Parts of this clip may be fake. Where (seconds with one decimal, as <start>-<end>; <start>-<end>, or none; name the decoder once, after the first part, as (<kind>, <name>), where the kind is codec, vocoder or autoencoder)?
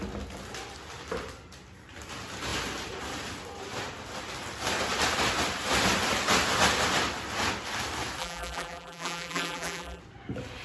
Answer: 8.2-10.0 (vocoder, BigVGAN v2)